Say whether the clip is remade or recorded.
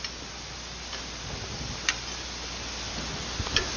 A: recorded